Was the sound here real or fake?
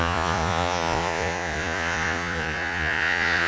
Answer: fake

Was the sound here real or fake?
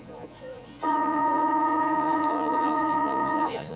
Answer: fake